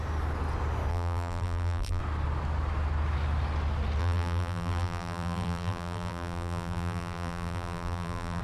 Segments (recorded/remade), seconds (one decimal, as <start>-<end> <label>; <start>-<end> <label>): 0.0-0.9 recorded; 0.9-2.0 remade; 2.0-4.0 recorded; 4.0-8.4 remade